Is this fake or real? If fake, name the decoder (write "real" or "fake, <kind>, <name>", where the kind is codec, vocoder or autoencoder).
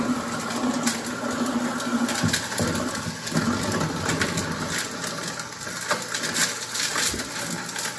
real